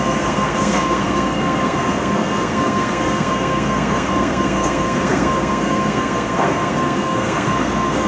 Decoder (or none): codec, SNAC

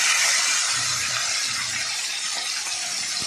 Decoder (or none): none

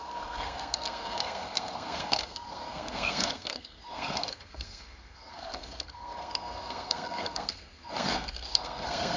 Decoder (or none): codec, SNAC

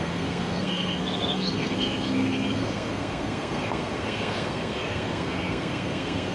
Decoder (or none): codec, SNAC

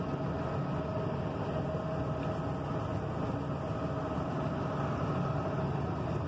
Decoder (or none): none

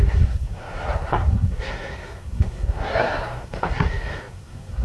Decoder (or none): codec, SNAC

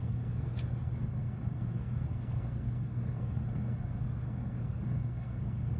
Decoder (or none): codec, SNAC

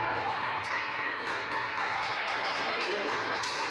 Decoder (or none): codec, SNAC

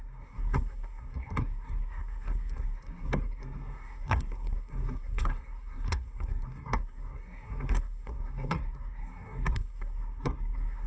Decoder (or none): codec, SNAC